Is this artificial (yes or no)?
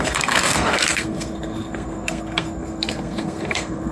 yes